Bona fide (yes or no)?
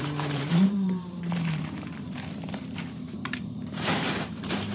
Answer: no